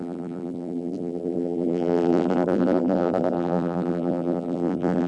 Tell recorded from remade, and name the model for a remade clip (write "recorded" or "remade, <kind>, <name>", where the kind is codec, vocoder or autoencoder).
remade, vocoder, BigVGAN v2